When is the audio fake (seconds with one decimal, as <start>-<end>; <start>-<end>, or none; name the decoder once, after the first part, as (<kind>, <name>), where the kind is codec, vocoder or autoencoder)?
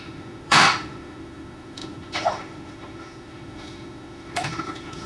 0.0-5.1 (autoencoder, DAC-VAE)